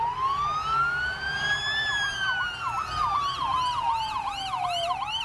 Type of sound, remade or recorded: recorded